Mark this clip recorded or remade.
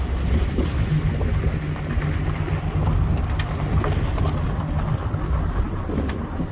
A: recorded